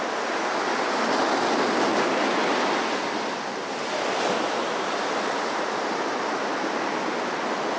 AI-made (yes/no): no